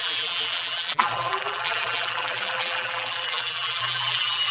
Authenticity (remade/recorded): remade